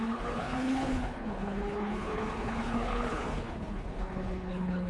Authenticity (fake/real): fake